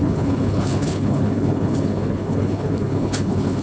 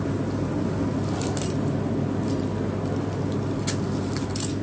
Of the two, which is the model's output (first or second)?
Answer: first